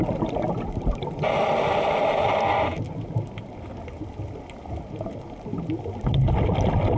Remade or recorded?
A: recorded